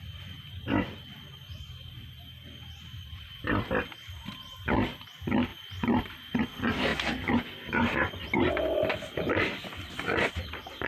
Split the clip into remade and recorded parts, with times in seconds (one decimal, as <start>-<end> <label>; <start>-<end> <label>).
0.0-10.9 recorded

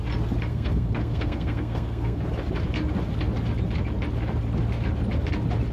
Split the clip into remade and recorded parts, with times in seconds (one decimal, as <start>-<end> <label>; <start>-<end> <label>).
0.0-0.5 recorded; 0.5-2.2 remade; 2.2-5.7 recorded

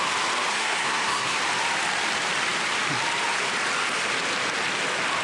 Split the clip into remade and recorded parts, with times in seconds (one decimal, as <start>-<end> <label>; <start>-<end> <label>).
0.0-0.5 recorded; 0.5-1.4 remade; 1.4-5.2 recorded